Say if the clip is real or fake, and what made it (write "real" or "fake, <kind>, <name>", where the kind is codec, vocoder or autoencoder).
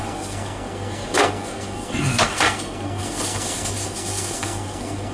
fake, codec, SNAC